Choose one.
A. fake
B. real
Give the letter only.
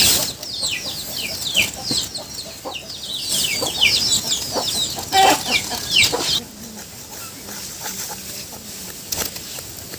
B